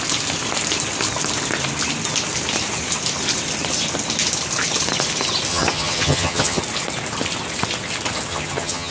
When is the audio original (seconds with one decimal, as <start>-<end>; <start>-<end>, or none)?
0.0-5.5; 6.6-8.3